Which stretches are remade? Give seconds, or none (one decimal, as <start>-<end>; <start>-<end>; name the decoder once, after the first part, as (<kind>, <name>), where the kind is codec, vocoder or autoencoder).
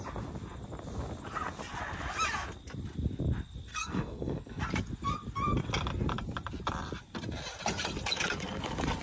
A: 3.7-4.6 (codec, SNAC)